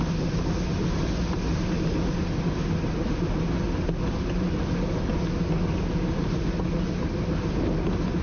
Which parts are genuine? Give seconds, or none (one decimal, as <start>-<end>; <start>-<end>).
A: 0.0-8.2